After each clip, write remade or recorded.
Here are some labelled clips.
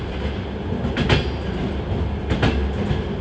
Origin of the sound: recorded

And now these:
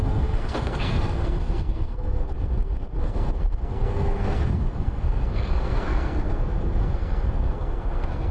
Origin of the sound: remade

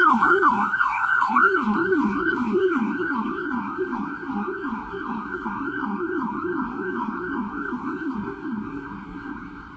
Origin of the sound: remade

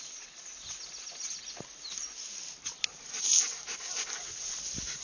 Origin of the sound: recorded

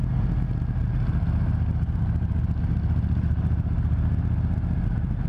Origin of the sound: recorded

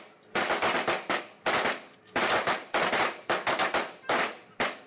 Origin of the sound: recorded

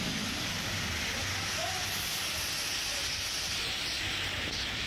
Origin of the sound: recorded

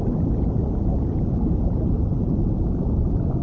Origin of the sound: recorded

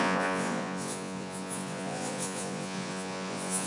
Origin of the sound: remade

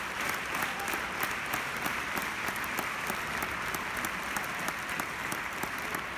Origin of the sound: recorded